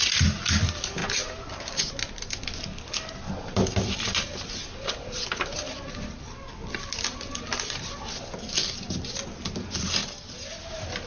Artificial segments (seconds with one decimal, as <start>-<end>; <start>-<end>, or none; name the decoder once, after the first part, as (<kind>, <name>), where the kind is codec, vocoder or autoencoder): none